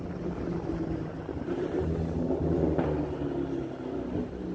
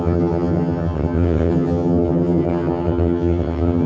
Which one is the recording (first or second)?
first